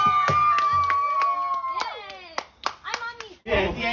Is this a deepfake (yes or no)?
no